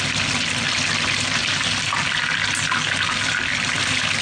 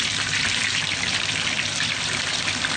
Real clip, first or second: first